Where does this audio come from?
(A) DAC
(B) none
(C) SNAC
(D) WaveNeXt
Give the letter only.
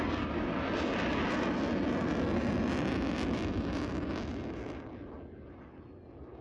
B